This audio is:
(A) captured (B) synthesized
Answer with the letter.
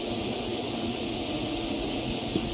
B